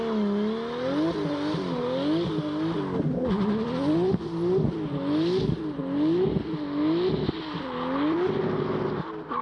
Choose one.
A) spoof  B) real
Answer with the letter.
B